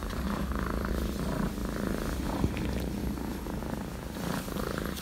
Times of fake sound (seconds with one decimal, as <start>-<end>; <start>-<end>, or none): 0.0-0.9; 3.0-3.6